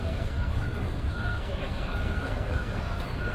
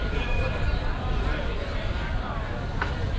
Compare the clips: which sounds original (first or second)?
second